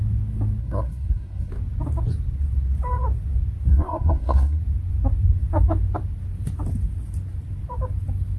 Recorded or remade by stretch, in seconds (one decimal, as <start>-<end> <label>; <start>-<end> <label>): 0.0-0.6 recorded; 0.6-1.5 remade; 1.5-3.7 recorded; 3.7-4.6 remade; 4.6-8.4 recorded